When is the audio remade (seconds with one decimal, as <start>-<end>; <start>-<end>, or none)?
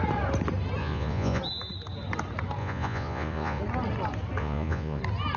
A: 0.8-1.4; 2.6-3.6; 4.4-5.0